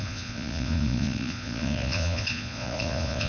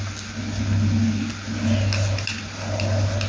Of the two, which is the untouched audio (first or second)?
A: second